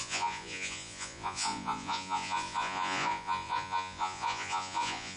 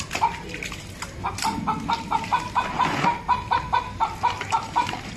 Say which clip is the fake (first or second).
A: first